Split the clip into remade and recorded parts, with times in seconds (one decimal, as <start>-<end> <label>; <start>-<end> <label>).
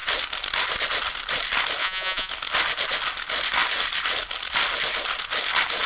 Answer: 0.0-1.8 recorded; 1.8-2.3 remade; 2.3-5.9 recorded